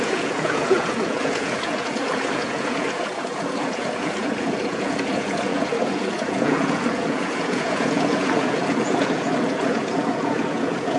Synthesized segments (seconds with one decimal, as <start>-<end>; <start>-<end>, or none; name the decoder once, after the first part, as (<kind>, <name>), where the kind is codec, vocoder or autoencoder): 0.0-11.0 (vocoder, Vocos)